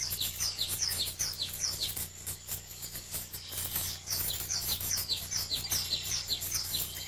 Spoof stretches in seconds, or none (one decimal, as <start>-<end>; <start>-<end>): 0.0-5.2; 6.1-7.1